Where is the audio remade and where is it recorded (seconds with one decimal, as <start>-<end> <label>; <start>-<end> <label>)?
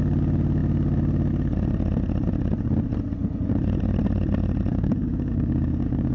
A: 0.0-4.7 recorded; 4.7-6.1 remade